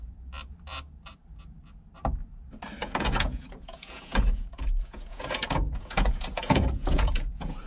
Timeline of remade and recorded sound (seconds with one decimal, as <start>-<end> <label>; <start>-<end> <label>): 0.0-2.8 recorded; 2.8-7.7 remade